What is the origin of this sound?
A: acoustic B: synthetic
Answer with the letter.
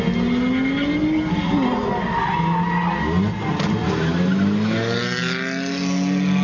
A